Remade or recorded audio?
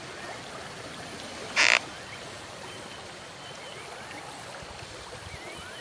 recorded